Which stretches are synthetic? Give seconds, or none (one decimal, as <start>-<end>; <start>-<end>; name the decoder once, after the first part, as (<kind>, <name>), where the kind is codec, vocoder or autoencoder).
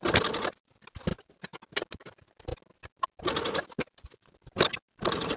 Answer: none